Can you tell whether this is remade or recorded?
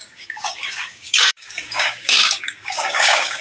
remade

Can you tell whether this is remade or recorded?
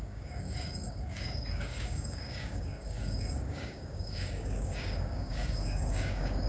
remade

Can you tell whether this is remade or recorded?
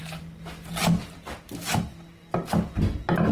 recorded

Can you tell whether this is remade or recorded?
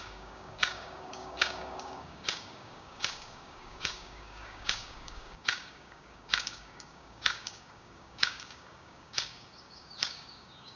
remade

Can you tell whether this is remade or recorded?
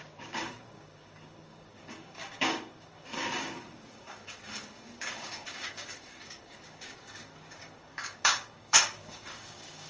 remade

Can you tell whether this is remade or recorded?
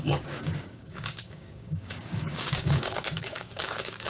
remade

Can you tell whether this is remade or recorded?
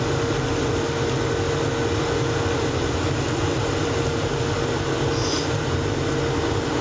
recorded